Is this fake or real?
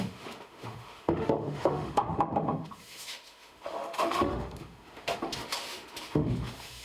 fake